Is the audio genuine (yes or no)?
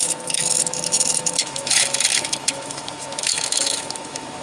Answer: no